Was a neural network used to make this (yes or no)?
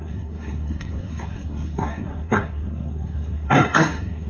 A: yes